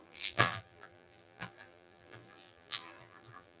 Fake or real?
fake